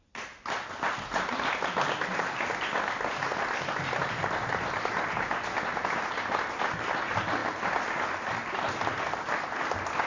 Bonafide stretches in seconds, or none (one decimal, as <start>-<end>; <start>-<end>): 0.0-10.1

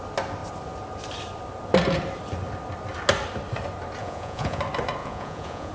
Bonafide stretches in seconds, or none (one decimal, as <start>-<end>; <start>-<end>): 0.0-4.0; 4.6-5.0

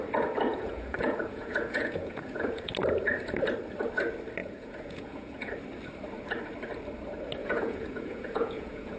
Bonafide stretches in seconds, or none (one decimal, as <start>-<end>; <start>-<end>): 0.0-0.5; 2.7-4.4; 5.5-7.4

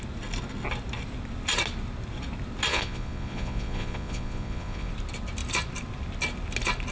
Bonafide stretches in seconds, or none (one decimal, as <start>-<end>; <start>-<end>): 0.0-2.7; 4.9-6.9

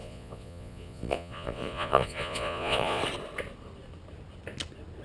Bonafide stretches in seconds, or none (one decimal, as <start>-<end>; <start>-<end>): 3.0-5.0

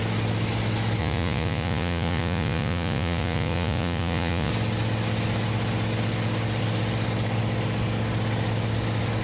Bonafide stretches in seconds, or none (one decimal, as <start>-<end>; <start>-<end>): 0.0-1.0; 4.5-9.2

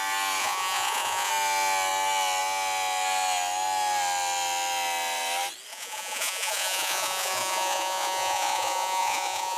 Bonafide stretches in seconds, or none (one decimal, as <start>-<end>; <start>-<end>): 0.0-0.4; 1.3-5.7